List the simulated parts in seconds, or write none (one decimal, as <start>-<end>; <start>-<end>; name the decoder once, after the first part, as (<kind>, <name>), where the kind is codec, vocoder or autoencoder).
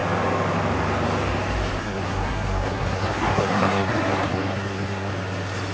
1.8-5.1 (codec, SNAC)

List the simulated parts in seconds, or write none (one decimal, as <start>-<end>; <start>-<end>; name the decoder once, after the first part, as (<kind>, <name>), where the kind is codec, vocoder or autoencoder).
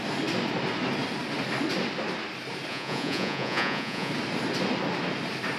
2.7-4.1 (vocoder, Vocos)